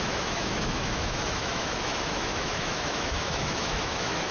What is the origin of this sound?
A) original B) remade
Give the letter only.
B